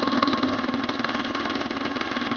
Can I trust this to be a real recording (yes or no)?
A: no